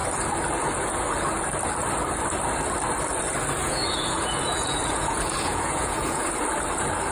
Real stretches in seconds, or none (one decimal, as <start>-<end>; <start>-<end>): 0.0-3.6; 6.2-7.1